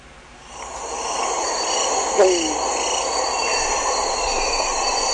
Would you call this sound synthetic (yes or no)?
no